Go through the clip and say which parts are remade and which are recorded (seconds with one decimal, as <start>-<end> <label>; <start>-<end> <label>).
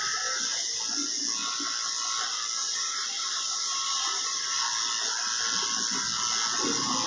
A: 0.0-2.6 recorded; 2.6-4.6 remade; 4.6-7.1 recorded